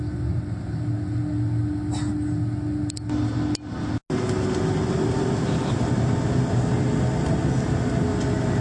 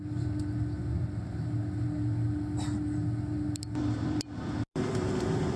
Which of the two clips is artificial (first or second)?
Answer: second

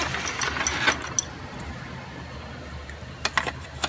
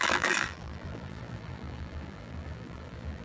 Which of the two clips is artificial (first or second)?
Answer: second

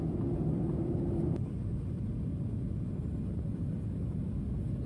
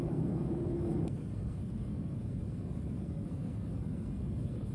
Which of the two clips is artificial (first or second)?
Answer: second